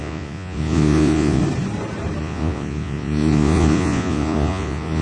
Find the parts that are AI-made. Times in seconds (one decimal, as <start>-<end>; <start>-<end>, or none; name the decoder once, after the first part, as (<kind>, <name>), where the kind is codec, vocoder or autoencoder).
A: 0.0-1.4 (vocoder, Vocos); 2.2-5.0